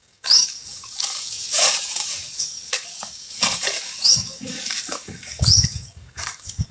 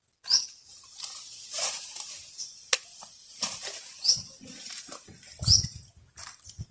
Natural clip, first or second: second